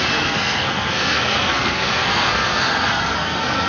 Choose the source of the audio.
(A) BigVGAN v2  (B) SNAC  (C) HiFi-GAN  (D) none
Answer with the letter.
B